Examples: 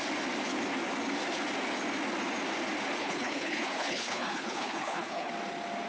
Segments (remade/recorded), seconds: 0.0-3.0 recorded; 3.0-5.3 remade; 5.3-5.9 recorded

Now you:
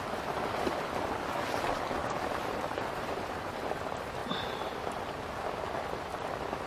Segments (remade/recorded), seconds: 0.0-2.0 recorded; 2.0-3.4 remade; 3.4-6.7 recorded

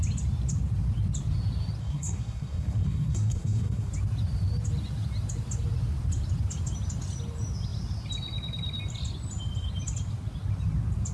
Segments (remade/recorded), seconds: 0.0-1.8 recorded; 1.8-3.9 remade; 3.9-11.1 recorded

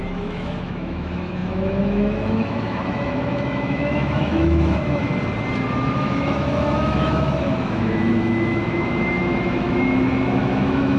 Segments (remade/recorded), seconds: 0.0-5.1 remade; 5.1-6.0 recorded; 6.0-11.0 remade

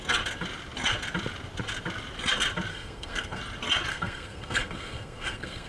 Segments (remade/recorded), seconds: 0.0-2.7 recorded; 2.7-3.4 remade; 3.4-3.9 recorded; 3.9-5.7 remade

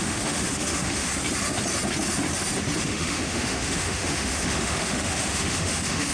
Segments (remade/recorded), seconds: 0.0-1.1 remade; 1.1-2.8 recorded; 2.8-6.1 remade

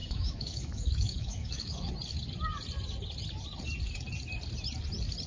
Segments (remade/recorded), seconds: 0.0-1.9 remade; 1.9-5.3 recorded